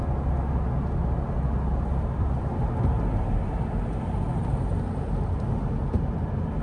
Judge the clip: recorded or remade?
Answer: recorded